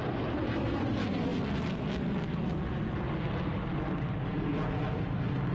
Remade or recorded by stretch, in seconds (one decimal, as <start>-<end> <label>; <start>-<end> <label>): 0.0-5.5 recorded